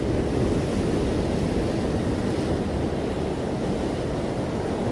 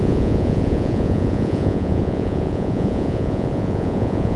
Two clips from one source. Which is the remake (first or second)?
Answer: second